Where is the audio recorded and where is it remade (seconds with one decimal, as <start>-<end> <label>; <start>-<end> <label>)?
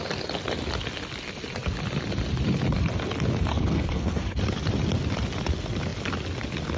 0.0-3.5 recorded; 3.5-4.4 remade; 4.4-6.8 recorded